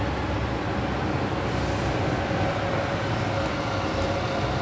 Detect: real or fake real